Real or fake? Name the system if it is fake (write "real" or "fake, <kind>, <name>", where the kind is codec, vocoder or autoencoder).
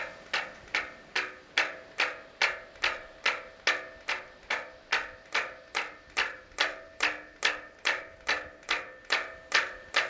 real